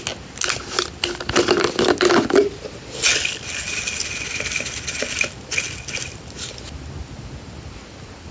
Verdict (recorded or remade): recorded